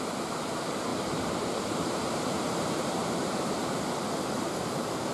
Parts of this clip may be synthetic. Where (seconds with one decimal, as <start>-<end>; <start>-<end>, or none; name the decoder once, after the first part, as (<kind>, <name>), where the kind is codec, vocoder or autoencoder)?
0.9-4.0 (vocoder, BigVGAN v2)